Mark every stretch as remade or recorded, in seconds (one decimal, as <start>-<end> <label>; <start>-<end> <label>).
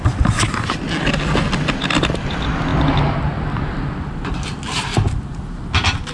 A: 0.0-6.1 recorded